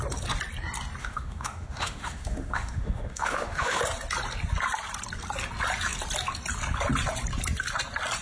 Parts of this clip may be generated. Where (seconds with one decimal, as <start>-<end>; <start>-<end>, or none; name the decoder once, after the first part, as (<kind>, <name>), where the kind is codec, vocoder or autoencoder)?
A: 1.0-3.8 (autoencoder, DAC-VAE)